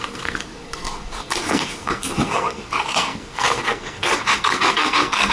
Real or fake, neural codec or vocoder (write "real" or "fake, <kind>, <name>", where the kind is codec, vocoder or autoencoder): fake, codec, SNAC